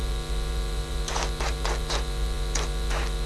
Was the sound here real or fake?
fake